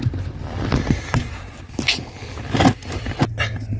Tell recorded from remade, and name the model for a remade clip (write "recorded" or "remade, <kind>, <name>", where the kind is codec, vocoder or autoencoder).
recorded